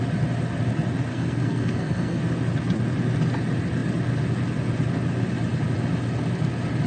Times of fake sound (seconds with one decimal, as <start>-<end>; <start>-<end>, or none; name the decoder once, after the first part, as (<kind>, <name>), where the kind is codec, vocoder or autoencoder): 1.1-2.2 (codec, SNAC)